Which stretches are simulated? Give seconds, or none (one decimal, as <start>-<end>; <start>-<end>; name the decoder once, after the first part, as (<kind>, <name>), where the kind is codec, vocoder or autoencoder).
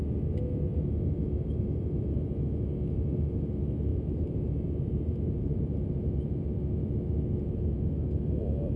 3.9-6.1 (vocoder, BigVGAN v2)